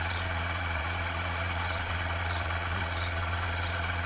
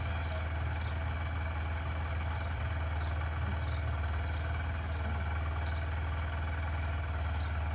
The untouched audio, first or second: second